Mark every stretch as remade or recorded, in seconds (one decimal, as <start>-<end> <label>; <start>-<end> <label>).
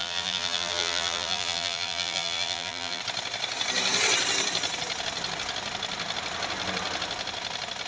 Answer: 0.0-3.0 remade; 3.0-7.9 recorded